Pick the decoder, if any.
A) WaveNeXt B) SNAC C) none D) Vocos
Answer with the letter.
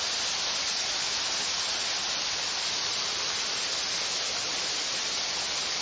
C